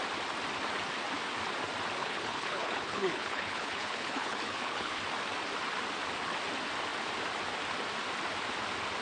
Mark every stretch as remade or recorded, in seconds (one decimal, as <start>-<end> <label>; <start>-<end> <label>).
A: 0.0-2.0 recorded; 2.0-5.0 remade; 5.0-9.0 recorded